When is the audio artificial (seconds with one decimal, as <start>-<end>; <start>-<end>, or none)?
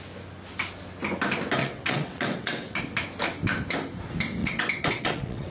1.6-2.8; 4.4-5.5